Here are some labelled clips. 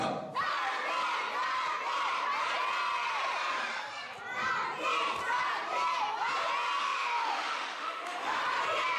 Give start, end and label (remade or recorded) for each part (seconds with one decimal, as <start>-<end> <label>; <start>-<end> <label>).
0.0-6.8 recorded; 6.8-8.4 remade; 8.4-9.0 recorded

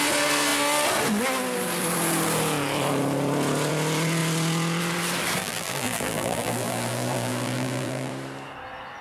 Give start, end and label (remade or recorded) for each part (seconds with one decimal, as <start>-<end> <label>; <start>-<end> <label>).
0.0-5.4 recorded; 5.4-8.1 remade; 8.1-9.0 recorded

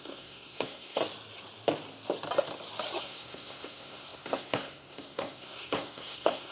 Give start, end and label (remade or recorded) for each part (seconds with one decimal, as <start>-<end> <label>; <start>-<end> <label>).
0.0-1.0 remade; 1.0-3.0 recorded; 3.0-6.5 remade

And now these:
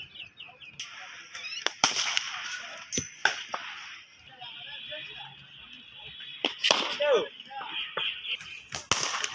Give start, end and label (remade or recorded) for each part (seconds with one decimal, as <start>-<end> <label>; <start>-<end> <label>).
0.0-1.8 recorded; 1.8-2.7 remade; 2.7-3.2 recorded; 3.2-5.2 remade; 5.2-6.3 recorded; 6.3-7.0 remade; 7.0-9.3 recorded

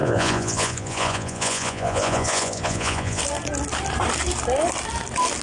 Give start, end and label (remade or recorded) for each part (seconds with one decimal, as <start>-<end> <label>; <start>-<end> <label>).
0.0-3.2 remade; 3.2-5.4 recorded

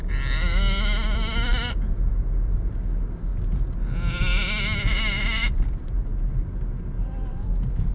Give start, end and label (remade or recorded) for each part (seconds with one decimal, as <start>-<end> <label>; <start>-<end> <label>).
0.0-3.3 remade; 3.3-5.2 recorded; 5.2-6.1 remade; 6.1-7.9 recorded

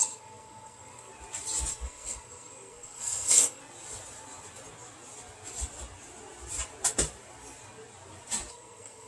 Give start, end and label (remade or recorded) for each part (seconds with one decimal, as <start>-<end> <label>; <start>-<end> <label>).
0.0-1.1 remade; 1.1-1.7 recorded; 1.7-3.6 remade; 3.6-8.5 recorded; 8.5-9.1 remade